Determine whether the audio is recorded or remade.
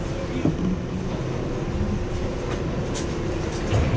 recorded